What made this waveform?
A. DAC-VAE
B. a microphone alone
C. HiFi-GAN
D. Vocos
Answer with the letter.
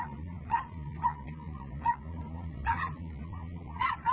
D